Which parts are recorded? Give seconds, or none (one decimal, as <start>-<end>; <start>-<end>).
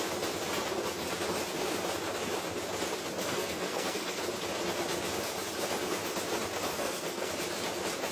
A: 0.0-3.2; 4.2-6.7; 7.3-8.1